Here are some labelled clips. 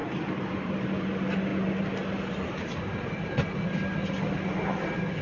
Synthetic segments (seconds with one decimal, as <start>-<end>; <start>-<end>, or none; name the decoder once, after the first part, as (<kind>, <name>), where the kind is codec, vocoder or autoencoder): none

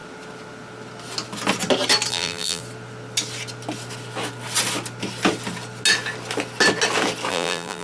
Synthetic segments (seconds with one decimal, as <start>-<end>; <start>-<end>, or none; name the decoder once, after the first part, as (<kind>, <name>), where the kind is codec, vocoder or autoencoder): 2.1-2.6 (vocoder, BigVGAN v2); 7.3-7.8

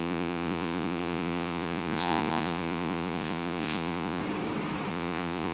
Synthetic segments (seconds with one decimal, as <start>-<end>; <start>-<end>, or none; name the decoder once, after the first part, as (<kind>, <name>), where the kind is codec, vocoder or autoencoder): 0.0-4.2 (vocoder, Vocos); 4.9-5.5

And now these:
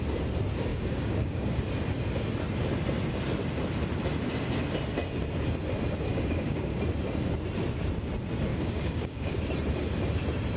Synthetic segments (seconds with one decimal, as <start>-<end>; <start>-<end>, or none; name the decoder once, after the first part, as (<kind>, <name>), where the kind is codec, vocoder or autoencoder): 0.7-1.6 (codec, DAC); 6.1-6.8; 8.5-9.4

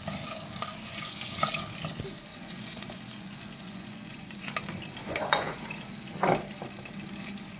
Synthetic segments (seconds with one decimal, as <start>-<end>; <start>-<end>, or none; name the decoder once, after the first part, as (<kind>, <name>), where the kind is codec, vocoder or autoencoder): 0.7-1.5 (vocoder, Vocos); 2.3-4.5; 5.0-5.7

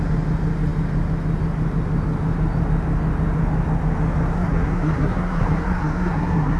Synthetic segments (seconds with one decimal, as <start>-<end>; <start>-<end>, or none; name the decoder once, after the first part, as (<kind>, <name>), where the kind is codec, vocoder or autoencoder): 4.3-6.6 (codec, SNAC)